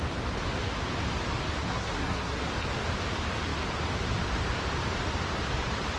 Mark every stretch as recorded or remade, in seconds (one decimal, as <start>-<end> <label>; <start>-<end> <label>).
0.0-1.6 recorded; 1.6-2.4 remade; 2.4-6.0 recorded

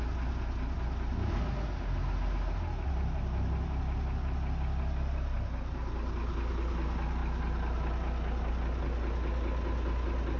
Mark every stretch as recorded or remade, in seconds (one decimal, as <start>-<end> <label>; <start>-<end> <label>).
0.0-10.4 recorded

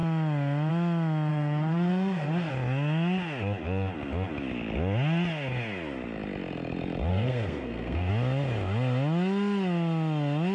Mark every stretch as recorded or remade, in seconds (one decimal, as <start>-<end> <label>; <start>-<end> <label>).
0.0-1.3 recorded; 1.3-2.5 remade; 2.5-7.1 recorded; 7.1-8.1 remade; 8.1-10.5 recorded

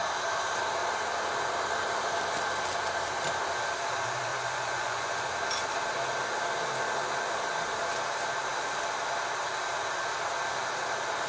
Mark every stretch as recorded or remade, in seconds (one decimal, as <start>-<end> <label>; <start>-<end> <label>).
0.0-4.3 recorded; 4.3-5.3 remade; 5.3-11.3 recorded

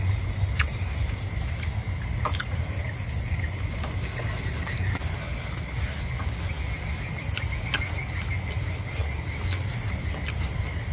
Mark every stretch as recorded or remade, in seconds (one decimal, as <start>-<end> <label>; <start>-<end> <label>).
0.0-10.9 recorded

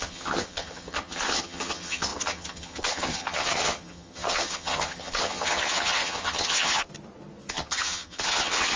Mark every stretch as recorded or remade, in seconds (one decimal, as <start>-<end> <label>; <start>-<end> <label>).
0.0-6.9 remade; 6.9-7.5 recorded; 7.5-8.8 remade

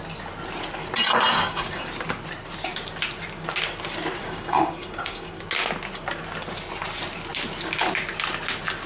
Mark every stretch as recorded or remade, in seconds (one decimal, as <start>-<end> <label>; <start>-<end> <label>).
0.0-1.3 recorded; 1.3-1.9 remade; 1.9-4.2 recorded; 4.2-5.4 remade; 5.4-8.9 recorded